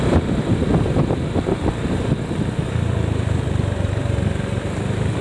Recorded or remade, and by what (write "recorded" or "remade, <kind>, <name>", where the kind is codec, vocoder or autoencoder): remade, vocoder, BigVGAN v2